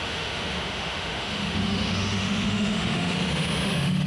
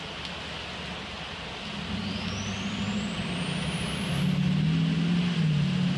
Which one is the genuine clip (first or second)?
second